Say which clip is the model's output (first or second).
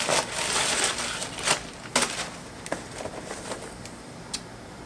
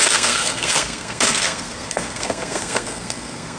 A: second